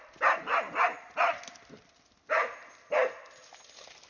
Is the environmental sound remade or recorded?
recorded